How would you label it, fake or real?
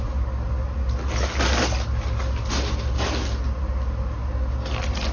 real